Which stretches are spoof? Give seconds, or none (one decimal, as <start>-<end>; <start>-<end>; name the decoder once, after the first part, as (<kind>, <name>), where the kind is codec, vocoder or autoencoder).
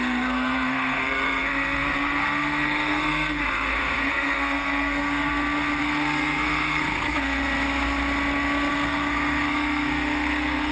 0.0-5.3 (codec, SNAC); 5.8-7.4; 8.7-10.7